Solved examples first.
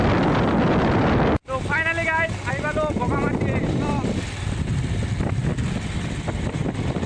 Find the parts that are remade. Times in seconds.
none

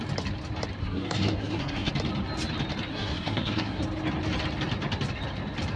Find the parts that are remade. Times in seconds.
0.8-1.9 (codec, SNAC); 2.9-3.8

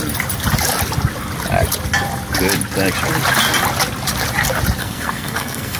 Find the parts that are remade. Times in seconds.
4.8-5.8 (codec, SNAC)

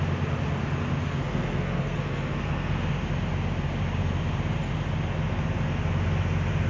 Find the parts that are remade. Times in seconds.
1.0-2.9 (codec, SNAC)

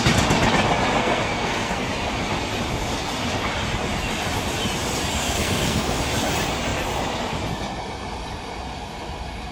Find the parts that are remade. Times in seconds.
1.0-1.9 (codec, SNAC); 5.2-6.0